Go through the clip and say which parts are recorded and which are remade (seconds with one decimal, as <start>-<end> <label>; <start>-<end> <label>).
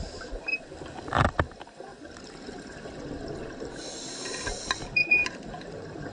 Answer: 0.0-6.1 recorded